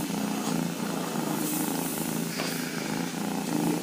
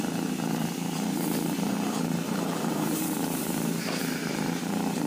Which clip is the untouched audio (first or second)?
first